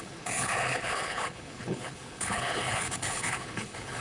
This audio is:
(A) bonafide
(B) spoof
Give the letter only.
B